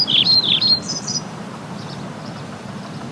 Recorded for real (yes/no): no